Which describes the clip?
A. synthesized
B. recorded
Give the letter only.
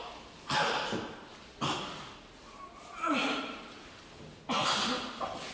B